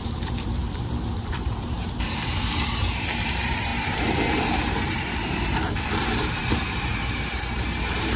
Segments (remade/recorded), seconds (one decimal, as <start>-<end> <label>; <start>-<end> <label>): 0.0-8.2 remade

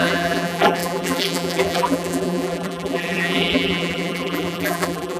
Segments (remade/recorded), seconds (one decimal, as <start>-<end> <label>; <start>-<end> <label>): 0.0-5.2 remade

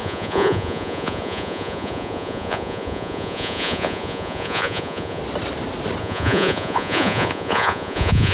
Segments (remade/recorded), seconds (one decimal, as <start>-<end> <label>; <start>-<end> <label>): 0.0-5.2 remade; 5.2-6.0 recorded; 6.0-8.3 remade

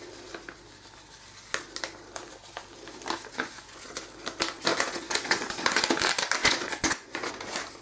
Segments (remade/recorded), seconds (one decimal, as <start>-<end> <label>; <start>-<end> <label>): 0.0-3.3 recorded; 3.3-4.0 remade; 4.0-4.7 recorded; 4.7-5.9 remade; 5.9-6.4 recorded; 6.4-7.3 remade; 7.3-7.8 recorded